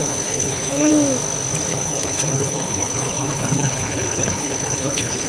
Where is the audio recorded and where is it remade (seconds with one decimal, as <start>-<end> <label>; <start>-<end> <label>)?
0.0-0.9 remade; 0.9-1.7 recorded; 1.7-5.3 remade